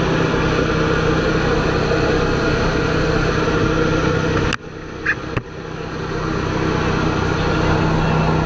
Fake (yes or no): no